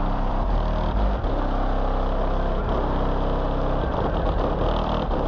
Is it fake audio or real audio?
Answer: fake